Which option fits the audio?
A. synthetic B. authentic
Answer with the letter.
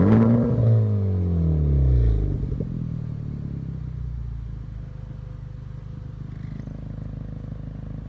B